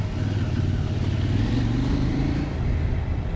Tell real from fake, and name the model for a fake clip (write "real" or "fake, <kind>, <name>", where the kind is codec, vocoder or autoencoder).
real